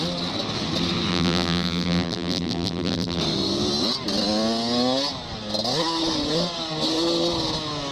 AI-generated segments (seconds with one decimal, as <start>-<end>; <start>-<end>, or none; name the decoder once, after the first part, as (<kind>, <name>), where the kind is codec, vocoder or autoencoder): 1.1-3.2 (vocoder, BigVGAN v2)

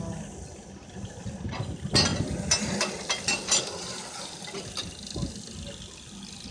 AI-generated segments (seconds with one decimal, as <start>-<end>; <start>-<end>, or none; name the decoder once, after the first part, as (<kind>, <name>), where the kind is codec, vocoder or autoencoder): none